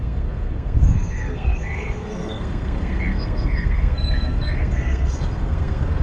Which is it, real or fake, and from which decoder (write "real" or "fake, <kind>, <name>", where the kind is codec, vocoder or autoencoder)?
fake, codec, SNAC